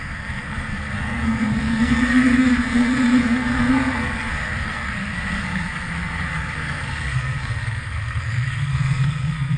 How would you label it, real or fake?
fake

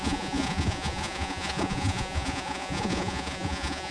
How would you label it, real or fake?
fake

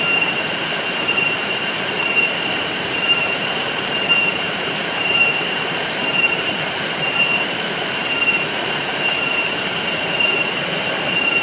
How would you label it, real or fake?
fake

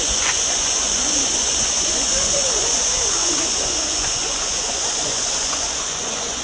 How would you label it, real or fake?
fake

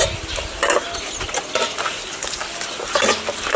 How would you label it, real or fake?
real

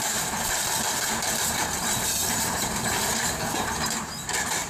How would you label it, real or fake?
fake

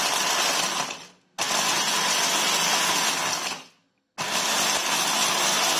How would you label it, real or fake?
real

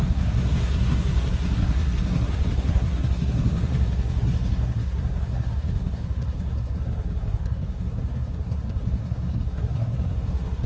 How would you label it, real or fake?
fake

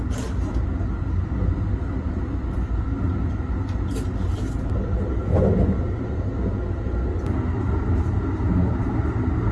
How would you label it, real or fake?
real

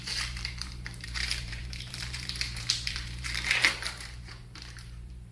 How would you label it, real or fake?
fake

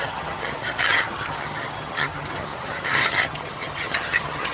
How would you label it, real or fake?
fake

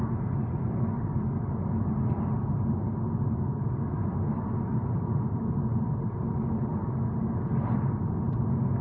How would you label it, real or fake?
real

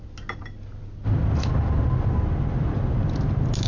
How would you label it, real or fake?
real